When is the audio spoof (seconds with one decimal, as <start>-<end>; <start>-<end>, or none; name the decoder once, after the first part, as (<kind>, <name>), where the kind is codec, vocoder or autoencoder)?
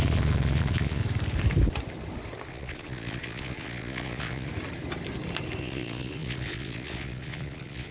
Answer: 0.0-1.0 (vocoder, Vocos); 2.5-4.5; 5.6-7.9